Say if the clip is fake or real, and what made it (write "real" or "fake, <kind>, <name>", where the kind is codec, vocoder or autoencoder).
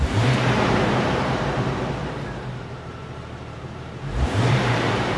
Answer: fake, vocoder, BigVGAN v2